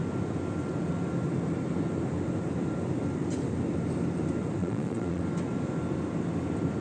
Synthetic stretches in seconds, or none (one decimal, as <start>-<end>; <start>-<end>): 4.6-5.2